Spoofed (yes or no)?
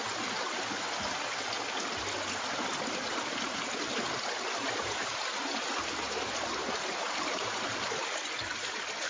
no